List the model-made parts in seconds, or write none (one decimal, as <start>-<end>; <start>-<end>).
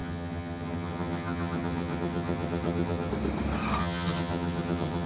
0.0-3.1; 3.8-5.1